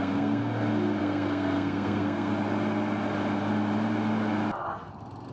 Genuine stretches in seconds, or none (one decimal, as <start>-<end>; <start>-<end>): 0.4-1.0; 2.3-5.3